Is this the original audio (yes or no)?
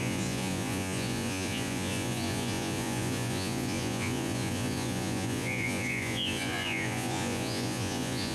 no